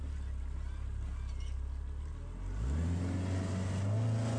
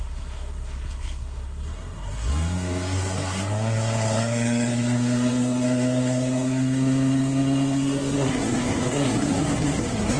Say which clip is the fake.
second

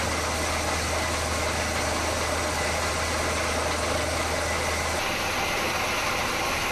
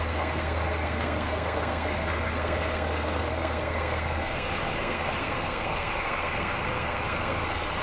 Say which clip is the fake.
second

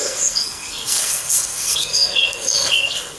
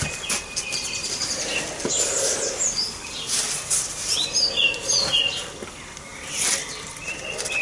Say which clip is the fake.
first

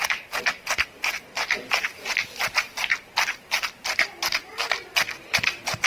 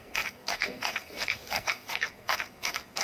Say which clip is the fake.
second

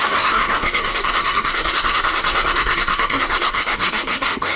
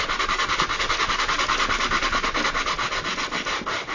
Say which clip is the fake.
first